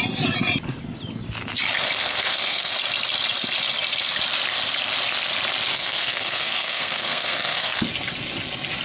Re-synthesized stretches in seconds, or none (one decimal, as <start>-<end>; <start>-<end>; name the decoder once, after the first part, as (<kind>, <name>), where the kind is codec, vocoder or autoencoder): 2.0-2.7 (codec, SNAC); 5.7-7.8